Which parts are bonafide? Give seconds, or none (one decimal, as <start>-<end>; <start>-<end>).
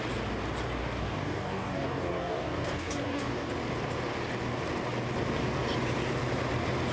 0.0-0.8; 3.5-6.9